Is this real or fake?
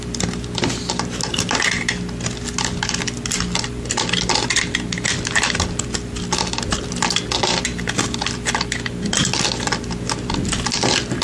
real